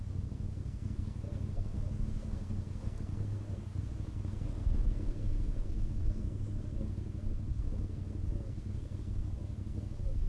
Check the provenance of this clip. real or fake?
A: fake